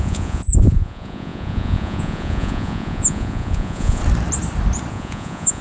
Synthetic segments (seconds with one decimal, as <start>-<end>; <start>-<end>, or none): 0.0-4.0; 4.9-5.6